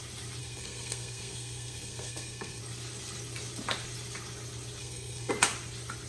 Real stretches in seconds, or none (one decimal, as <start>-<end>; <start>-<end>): 0.0-0.4; 2.6-4.8; 5.3-6.1